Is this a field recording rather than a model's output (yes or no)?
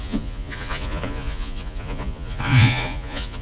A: no